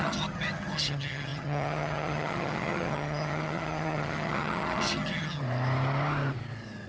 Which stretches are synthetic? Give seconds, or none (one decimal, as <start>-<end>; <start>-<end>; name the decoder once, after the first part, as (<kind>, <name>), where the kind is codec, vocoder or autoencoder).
0.0-5.4 (vocoder, HiFi-GAN)

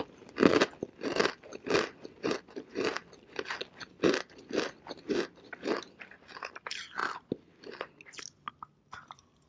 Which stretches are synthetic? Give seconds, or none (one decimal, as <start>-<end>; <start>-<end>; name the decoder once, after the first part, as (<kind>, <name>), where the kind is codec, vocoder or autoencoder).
none

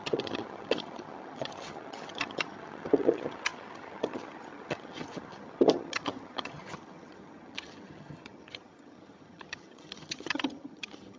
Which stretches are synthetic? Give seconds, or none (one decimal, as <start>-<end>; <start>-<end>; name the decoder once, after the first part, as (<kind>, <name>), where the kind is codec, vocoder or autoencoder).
0.0-11.2 (vocoder, HiFi-GAN)

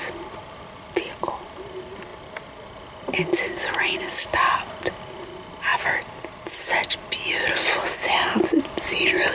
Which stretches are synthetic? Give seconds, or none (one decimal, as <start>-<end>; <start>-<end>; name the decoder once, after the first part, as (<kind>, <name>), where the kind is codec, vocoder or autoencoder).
none

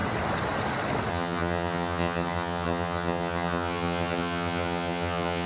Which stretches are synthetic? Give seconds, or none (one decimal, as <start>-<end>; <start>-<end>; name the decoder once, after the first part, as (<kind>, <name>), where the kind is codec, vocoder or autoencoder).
1.1-5.5 (vocoder, HiFi-GAN)

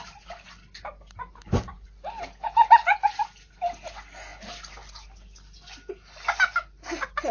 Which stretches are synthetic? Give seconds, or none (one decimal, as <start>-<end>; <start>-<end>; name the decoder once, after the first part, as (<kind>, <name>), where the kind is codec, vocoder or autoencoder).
none

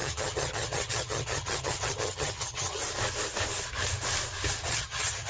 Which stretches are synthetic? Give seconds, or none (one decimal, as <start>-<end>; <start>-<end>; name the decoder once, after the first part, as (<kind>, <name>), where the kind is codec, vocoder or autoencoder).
0.0-2.8 (vocoder, HiFi-GAN); 4.7-5.3